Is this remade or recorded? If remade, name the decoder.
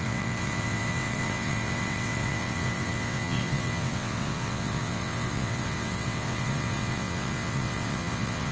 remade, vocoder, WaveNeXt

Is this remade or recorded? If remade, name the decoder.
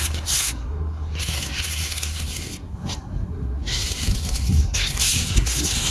remade, codec, SNAC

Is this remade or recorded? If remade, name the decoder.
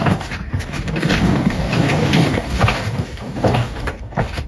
remade, codec, DAC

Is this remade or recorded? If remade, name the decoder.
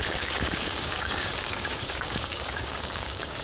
remade, codec, DAC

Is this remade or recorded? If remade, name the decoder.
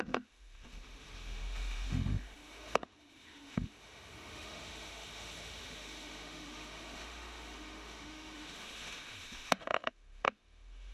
remade, autoencoder, DAC-VAE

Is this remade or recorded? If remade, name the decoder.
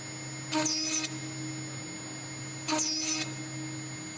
recorded